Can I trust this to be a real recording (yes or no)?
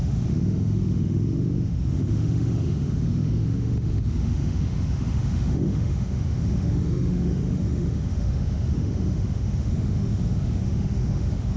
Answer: no